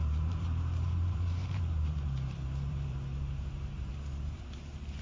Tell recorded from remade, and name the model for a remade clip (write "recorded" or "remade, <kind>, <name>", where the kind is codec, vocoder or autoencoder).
remade, vocoder, BigVGAN v2